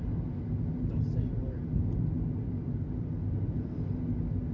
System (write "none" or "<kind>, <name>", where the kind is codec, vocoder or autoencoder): none